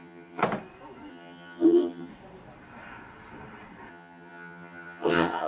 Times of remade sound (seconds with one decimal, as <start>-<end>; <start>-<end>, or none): 0.0-0.4; 1.1-2.1; 3.9-5.5